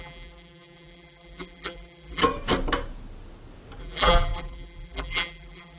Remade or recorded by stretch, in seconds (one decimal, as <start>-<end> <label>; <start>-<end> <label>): 0.0-2.2 remade; 2.2-3.8 recorded; 3.8-5.8 remade